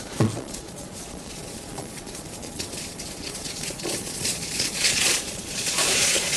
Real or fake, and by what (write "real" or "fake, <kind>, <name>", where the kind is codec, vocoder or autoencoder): fake, vocoder, Vocos